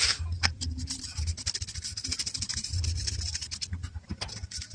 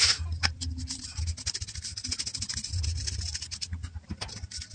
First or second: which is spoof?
first